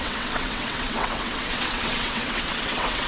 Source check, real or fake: fake